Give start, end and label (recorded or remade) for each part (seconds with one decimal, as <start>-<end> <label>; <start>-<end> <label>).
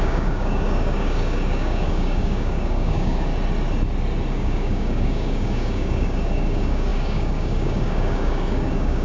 0.0-3.3 remade; 3.3-4.3 recorded; 4.3-9.0 remade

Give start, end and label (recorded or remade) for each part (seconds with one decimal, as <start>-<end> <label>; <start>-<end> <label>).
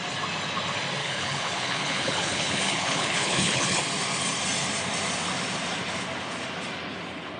0.0-1.0 recorded; 1.0-3.8 remade; 3.8-7.4 recorded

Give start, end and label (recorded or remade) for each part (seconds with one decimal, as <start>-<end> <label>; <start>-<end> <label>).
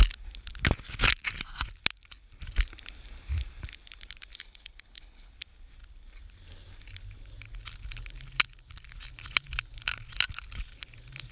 0.0-4.3 recorded; 4.3-5.3 remade; 5.3-11.3 recorded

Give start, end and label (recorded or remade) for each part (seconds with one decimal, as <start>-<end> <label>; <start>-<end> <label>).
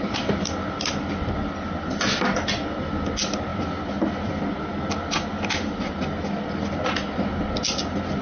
0.0-8.2 recorded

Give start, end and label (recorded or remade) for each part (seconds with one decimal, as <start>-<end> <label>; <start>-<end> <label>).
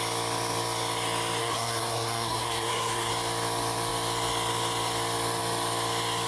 0.0-1.4 recorded; 1.4-3.1 remade; 3.1-6.3 recorded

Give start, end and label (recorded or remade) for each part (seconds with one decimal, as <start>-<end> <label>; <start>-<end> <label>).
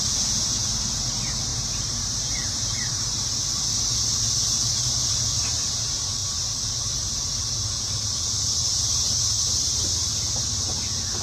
0.0-1.5 recorded; 1.5-3.3 remade; 3.3-6.2 recorded; 6.2-6.8 remade; 6.8-8.7 recorded; 8.7-9.7 remade; 9.7-11.2 recorded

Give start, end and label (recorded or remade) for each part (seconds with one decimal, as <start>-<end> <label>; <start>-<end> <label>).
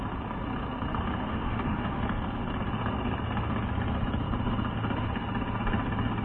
0.0-1.3 recorded; 1.3-2.0 remade; 2.0-6.2 recorded